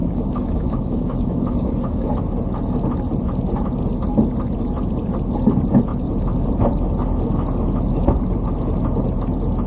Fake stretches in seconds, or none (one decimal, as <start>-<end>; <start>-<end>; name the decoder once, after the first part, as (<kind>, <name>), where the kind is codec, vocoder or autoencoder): 0.0-2.1 (codec, DAC)